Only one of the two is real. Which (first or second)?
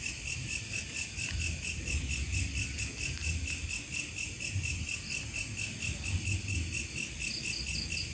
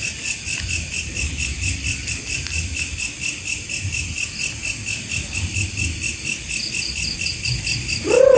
first